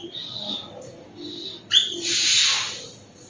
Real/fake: real